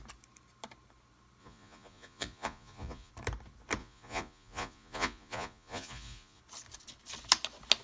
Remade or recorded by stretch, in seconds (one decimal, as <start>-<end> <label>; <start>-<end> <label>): 0.0-1.4 recorded; 1.4-3.1 remade; 3.1-3.8 recorded; 3.8-6.4 remade; 6.4-7.8 recorded